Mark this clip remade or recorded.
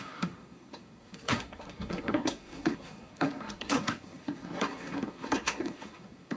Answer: remade